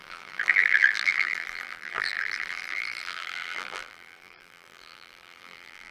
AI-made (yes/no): yes